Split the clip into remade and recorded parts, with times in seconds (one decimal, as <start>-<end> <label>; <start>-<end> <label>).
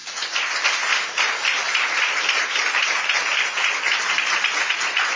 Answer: 0.0-0.9 recorded; 0.9-5.2 remade